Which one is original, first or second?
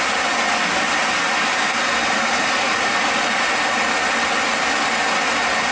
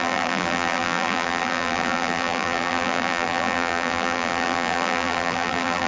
first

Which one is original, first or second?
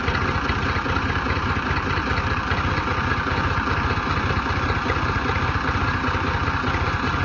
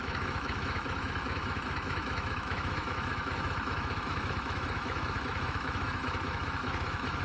first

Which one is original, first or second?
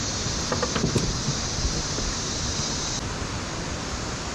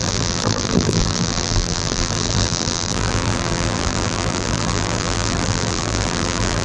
first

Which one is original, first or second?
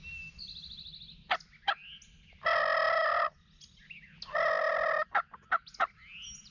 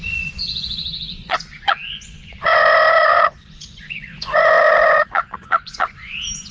first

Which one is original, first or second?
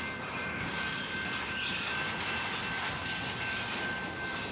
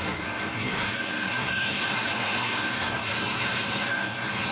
first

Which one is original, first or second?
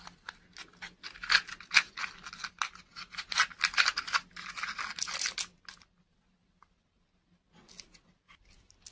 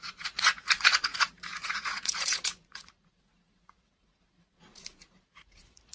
first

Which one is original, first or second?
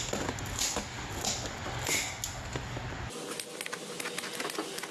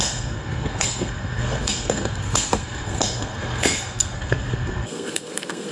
first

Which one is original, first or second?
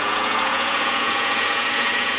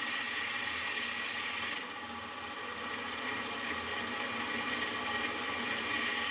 second